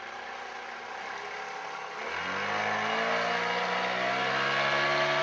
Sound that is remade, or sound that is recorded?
recorded